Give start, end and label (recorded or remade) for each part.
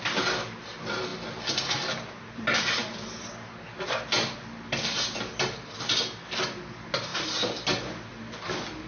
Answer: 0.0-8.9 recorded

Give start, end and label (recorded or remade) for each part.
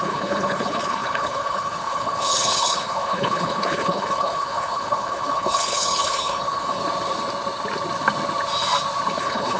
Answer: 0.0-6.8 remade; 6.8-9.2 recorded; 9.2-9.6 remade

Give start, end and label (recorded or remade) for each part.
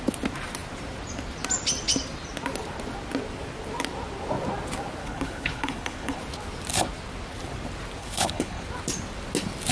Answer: 0.0-5.0 recorded; 5.0-6.2 remade; 6.2-8.0 recorded; 8.0-8.6 remade; 8.6-9.7 recorded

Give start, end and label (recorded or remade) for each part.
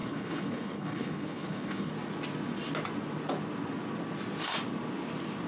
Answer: 0.0-1.9 remade; 1.9-5.5 recorded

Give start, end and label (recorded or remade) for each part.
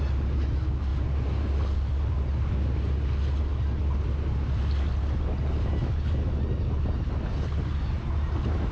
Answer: 0.0-8.7 recorded